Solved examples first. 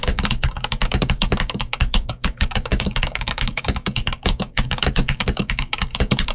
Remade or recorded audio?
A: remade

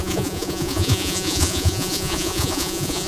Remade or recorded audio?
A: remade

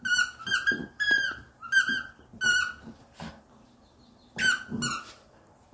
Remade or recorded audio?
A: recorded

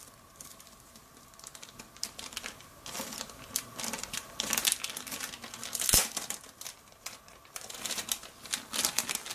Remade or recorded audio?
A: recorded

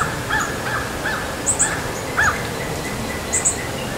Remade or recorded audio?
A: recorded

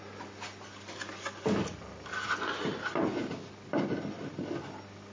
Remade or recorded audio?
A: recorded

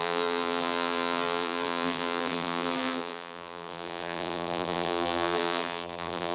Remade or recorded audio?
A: remade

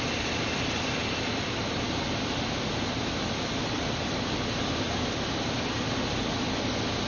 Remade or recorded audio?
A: recorded